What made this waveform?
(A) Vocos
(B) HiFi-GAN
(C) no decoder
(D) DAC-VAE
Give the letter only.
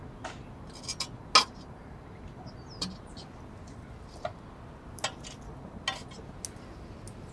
C